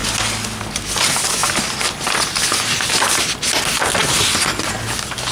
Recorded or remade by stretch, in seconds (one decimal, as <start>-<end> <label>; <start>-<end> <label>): 0.0-5.3 recorded